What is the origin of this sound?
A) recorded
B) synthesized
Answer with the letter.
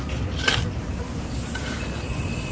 A